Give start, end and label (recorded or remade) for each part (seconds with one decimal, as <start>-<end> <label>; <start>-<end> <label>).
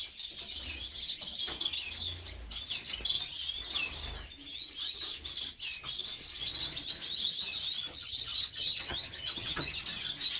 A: 0.0-7.9 recorded; 7.9-9.8 remade; 9.8-10.4 recorded